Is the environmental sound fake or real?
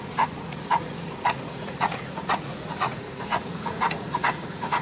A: fake